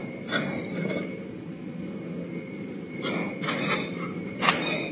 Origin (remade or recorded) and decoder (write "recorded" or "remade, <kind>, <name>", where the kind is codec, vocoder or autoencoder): remade, vocoder, BigVGAN v2